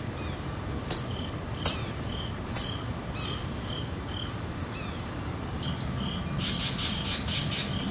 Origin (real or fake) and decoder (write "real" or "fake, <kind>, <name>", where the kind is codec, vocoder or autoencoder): real